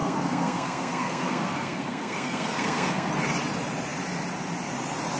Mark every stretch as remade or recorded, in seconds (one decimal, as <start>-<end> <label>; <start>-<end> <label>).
0.0-3.1 remade; 3.1-5.2 recorded